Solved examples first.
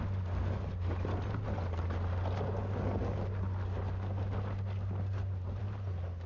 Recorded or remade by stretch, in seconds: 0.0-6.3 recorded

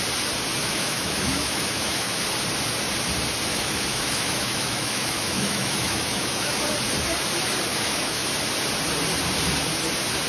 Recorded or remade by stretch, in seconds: 0.0-0.6 recorded; 0.6-2.2 remade; 2.2-3.5 recorded; 3.5-6.6 remade; 6.6-7.7 recorded; 7.7-8.3 remade; 8.3-10.3 recorded

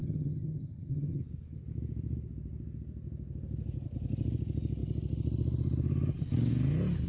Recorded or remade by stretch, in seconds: 0.0-1.2 remade; 1.2-7.1 recorded

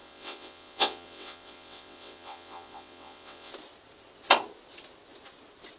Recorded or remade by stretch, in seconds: 0.0-3.5 remade; 3.5-5.8 recorded

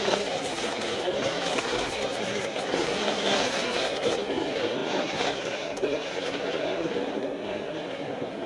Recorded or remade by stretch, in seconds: 0.0-8.5 remade